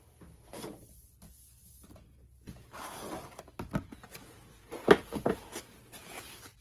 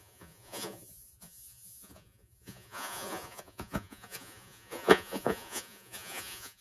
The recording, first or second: first